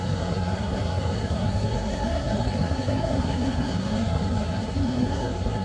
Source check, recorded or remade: remade